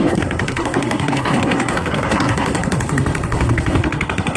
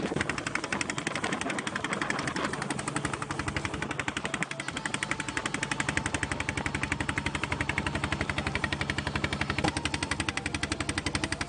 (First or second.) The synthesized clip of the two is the first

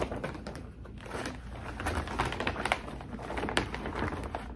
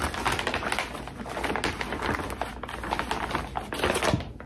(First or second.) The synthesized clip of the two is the first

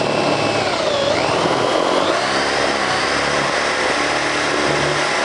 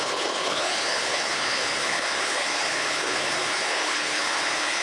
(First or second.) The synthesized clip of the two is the second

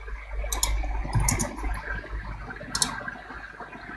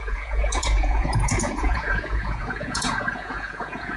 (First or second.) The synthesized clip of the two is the second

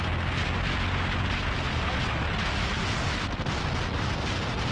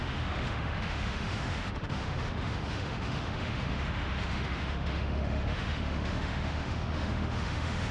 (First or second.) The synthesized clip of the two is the second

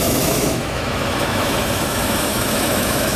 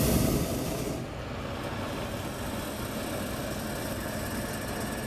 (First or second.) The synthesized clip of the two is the first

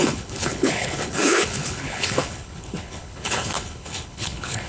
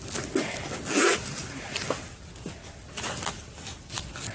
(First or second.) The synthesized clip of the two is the first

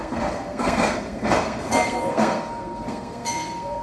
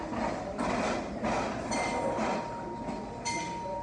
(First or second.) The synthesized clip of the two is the first